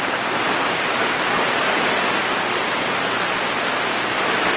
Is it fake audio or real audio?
real